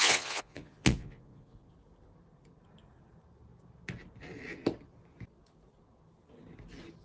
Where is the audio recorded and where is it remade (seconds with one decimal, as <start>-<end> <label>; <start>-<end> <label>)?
0.0-1.7 remade; 1.7-7.0 recorded